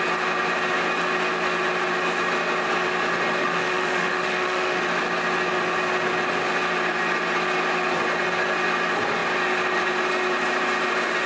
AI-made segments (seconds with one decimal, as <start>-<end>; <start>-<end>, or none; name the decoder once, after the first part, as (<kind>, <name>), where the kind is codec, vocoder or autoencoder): 3.4-4.8 (autoencoder, DAC-VAE)